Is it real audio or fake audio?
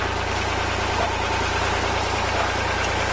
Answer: real